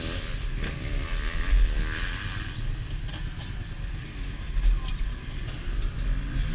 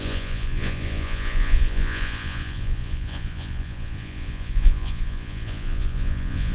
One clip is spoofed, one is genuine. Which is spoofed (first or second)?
second